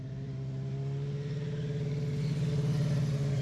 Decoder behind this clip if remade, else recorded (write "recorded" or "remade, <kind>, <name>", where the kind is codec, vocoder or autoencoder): recorded